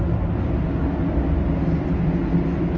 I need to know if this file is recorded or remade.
recorded